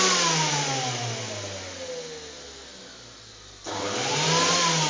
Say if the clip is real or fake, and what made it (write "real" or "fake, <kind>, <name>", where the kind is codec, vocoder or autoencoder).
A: real